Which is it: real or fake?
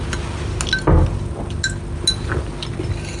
real